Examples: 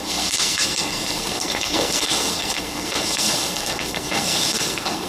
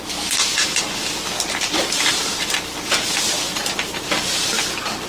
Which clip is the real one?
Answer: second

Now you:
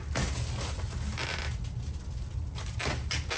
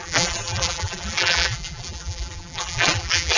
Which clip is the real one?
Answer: first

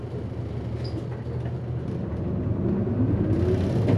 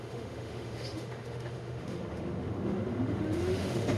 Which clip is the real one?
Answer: first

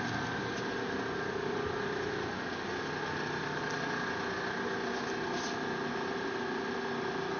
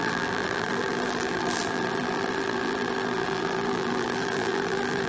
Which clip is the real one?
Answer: first